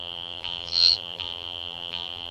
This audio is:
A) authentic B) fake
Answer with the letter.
B